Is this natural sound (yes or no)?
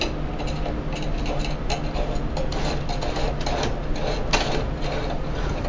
yes